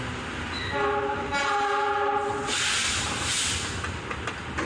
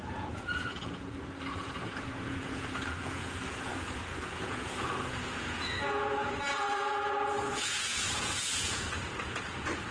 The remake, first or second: second